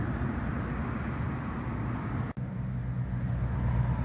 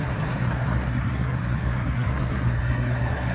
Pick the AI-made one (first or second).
second